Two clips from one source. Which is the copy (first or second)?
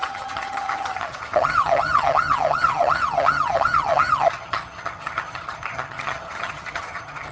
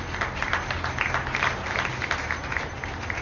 first